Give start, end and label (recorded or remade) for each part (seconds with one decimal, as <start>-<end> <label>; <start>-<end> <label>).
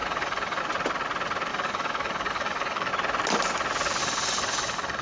0.0-0.6 remade; 0.6-1.5 recorded; 1.5-2.9 remade; 2.9-4.0 recorded; 4.0-5.0 remade